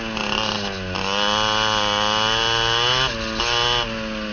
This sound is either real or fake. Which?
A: real